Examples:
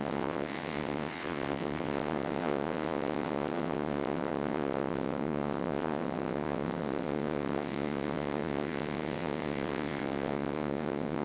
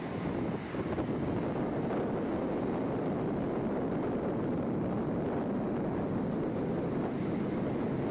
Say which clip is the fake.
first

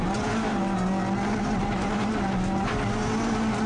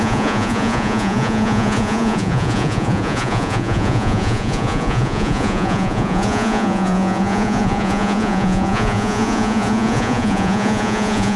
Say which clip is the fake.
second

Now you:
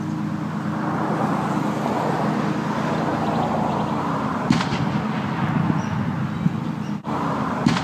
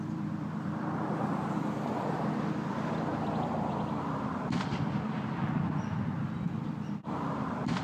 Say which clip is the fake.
second